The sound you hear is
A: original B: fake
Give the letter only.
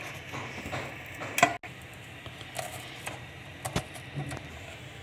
A